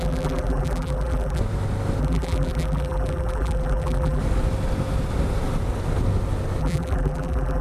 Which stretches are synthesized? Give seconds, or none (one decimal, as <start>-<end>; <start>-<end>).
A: 0.0-1.4; 2.0-4.2; 6.6-7.6